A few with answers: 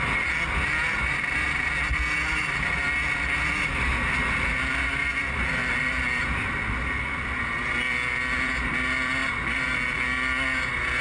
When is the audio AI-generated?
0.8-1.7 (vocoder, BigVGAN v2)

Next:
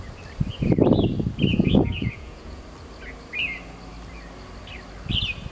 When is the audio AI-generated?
1.5-2.6 (vocoder, Vocos)

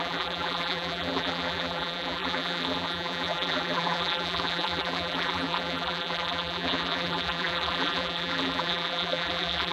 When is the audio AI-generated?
0.0-9.7 (vocoder, BigVGAN v2)